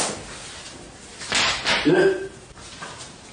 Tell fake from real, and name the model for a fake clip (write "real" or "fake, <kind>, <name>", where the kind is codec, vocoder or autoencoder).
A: real